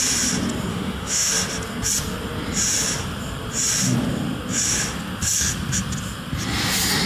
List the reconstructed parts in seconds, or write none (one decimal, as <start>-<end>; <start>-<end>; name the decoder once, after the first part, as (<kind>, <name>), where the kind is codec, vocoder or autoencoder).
0.7-1.3 (autoencoder, DAC-VAE)